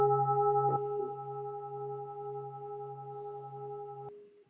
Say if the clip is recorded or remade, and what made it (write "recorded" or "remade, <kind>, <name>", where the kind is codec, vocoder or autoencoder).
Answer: recorded